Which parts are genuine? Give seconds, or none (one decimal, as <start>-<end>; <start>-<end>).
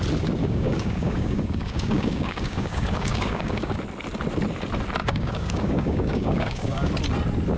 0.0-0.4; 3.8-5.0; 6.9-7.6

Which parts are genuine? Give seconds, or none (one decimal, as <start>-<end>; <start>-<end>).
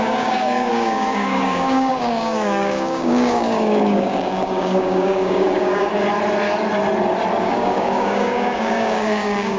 5.9-7.4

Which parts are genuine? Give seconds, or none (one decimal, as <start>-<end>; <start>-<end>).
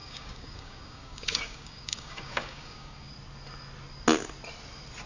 3.1-5.1